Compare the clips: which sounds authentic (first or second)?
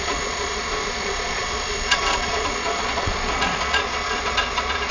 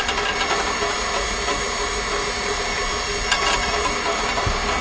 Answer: second